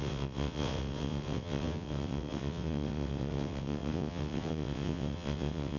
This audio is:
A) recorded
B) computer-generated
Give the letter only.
B